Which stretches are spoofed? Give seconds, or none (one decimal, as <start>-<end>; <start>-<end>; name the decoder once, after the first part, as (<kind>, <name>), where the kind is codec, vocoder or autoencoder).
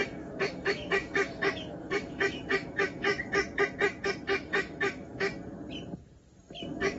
0.0-3.1 (autoencoder, DAC-VAE); 4.5-5.3; 6.6-7.0